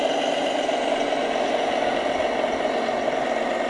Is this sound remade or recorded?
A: recorded